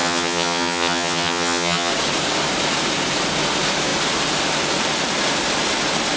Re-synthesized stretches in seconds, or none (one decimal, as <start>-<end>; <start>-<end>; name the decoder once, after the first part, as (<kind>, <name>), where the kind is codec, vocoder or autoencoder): 0.0-1.9 (vocoder, HiFi-GAN)